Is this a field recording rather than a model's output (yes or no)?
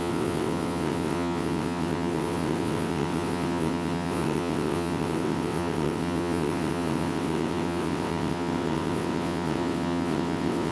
no